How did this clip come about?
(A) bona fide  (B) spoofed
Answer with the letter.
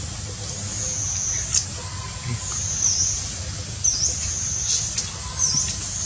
A